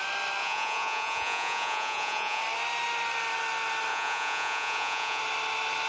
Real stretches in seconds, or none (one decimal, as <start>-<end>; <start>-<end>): 0.0-0.4; 2.4-3.9; 5.2-5.9